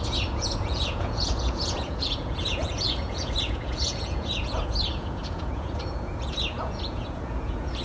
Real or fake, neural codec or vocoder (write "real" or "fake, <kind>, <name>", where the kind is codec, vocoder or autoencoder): fake, vocoder, Vocos